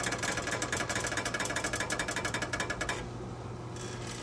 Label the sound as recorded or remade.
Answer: recorded